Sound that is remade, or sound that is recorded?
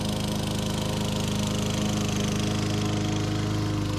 recorded